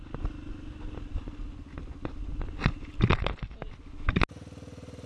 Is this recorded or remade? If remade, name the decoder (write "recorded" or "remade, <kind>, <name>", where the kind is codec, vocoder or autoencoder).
recorded